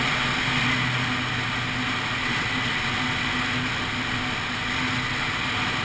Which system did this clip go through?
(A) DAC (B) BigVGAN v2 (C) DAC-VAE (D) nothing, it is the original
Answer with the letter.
D